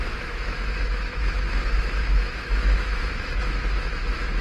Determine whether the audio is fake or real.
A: fake